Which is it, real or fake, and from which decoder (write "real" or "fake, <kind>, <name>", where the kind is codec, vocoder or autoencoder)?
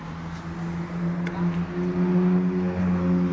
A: real